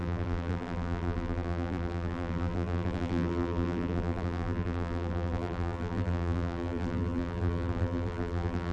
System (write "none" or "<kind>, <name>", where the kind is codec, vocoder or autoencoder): vocoder, BigVGAN v2